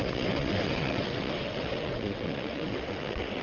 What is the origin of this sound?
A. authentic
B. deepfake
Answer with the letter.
B